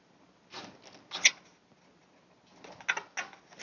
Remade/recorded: recorded